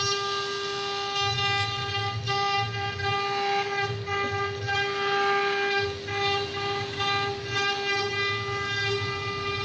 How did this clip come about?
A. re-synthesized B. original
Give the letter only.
B